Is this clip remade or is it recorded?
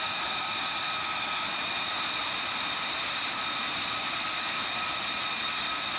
recorded